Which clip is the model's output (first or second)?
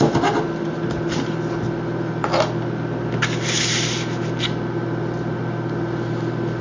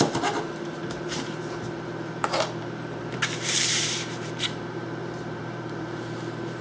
second